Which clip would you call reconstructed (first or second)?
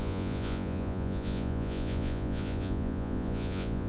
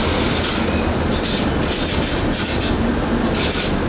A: first